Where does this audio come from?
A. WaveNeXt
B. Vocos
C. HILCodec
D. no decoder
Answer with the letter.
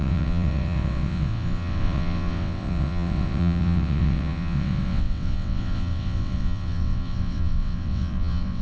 A